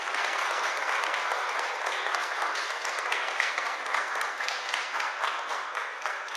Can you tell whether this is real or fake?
fake